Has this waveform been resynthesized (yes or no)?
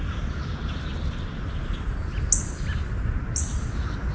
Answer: no